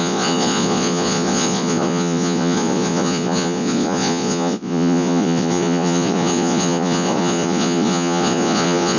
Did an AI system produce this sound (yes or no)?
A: yes